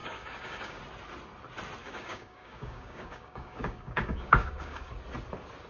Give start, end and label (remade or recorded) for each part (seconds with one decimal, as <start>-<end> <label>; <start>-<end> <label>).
0.0-0.8 remade; 0.8-1.8 recorded; 1.8-4.9 remade; 4.9-5.7 recorded